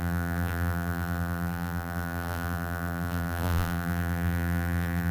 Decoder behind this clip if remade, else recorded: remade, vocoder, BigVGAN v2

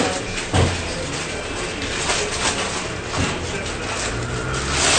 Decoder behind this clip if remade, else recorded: recorded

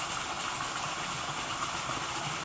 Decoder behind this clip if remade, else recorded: recorded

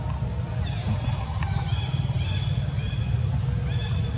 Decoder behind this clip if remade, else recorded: recorded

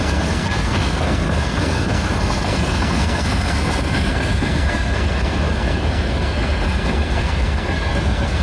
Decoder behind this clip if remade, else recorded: remade, codec, SNAC